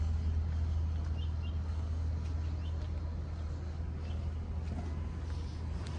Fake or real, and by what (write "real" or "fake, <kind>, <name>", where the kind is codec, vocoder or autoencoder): real